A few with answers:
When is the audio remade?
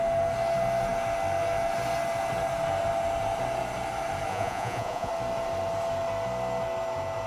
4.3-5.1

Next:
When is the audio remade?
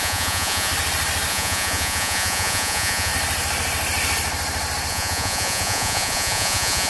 0.0-0.7; 1.3-3.1; 4.9-6.9